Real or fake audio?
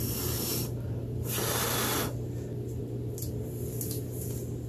real